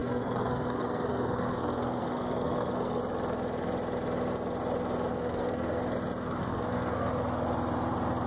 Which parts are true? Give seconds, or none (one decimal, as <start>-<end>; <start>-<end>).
3.0-5.1; 5.8-6.4; 7.1-8.3